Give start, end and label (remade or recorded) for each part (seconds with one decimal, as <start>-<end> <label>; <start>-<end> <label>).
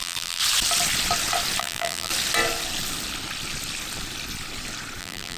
0.0-0.4 remade; 0.4-1.6 recorded; 1.6-2.1 remade; 2.1-5.0 recorded; 5.0-5.4 remade